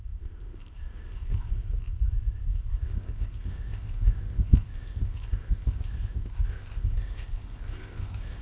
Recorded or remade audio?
remade